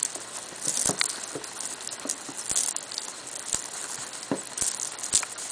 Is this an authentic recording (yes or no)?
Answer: yes